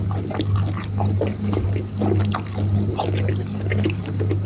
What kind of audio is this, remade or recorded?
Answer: recorded